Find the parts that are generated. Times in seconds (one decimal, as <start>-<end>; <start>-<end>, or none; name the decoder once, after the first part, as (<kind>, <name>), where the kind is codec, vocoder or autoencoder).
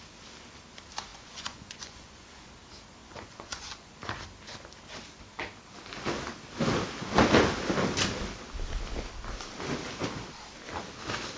1.1-2.5 (vocoder, Vocos); 3.0-3.9